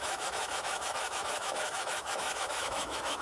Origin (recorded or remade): remade